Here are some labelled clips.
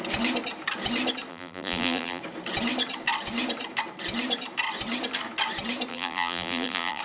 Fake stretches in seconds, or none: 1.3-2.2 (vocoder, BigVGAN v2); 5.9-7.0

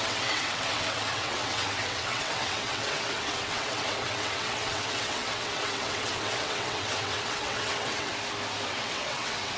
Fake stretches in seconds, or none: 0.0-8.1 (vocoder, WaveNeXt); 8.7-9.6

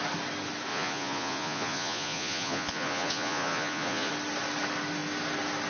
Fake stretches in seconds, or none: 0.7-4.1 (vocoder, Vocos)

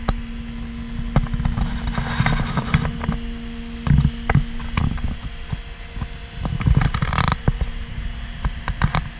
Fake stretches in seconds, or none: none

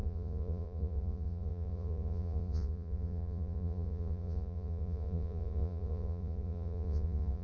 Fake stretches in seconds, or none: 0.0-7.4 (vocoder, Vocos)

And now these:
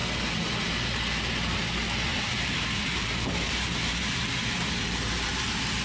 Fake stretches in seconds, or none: 2.1-5.8 (vocoder, BigVGAN v2)

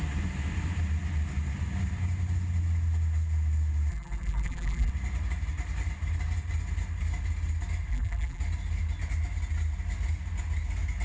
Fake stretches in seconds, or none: 3.9-4.9 (vocoder, BigVGAN v2); 7.9-8.4

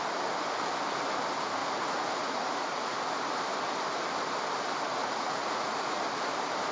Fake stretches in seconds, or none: 1.6-3.0 (vocoder, Vocos); 5.0-6.0